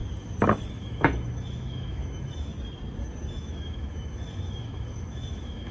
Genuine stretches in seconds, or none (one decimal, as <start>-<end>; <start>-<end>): 0.0-0.7; 2.5-3.3